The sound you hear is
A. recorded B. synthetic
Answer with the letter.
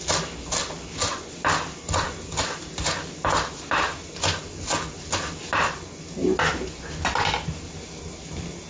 A